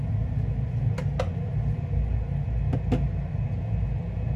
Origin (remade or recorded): recorded